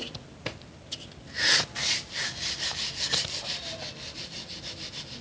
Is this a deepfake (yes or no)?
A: no